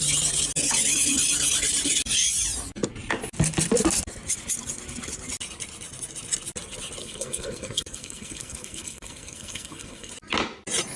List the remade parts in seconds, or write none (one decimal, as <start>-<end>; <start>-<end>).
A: 7.0-10.1